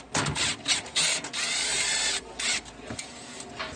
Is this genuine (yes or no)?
yes